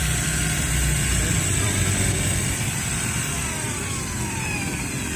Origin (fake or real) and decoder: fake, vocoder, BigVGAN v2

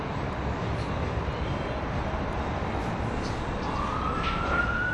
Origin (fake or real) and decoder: real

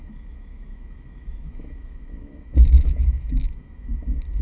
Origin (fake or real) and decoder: fake, autoencoder, DAC-VAE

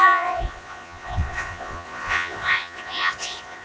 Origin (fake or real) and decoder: fake, vocoder, Vocos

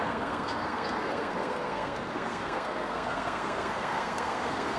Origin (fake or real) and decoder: fake, codec, SNAC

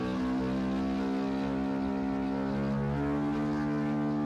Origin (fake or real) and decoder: real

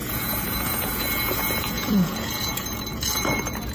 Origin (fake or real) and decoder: fake, vocoder, Vocos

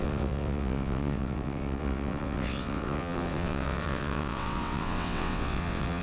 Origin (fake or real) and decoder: fake, vocoder, WaveNeXt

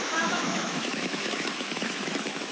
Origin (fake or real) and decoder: fake, autoencoder, DAC-VAE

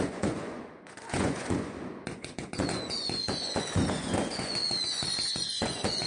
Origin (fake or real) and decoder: fake, vocoder, Vocos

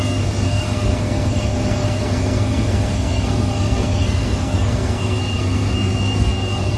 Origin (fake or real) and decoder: fake, codec, SNAC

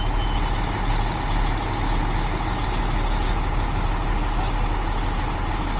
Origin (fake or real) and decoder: real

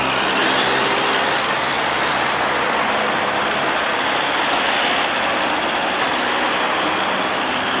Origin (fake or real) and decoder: real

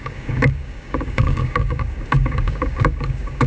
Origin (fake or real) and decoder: fake, codec, DAC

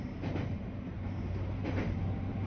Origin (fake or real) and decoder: fake, vocoder, BigVGAN v2